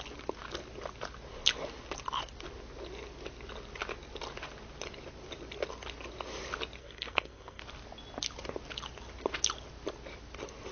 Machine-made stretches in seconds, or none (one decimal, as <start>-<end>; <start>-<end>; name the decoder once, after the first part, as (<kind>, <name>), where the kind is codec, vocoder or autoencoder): 6.8-7.6 (codec, SNAC)